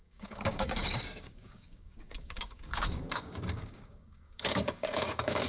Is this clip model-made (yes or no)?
yes